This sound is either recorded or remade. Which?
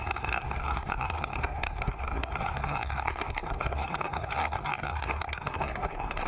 remade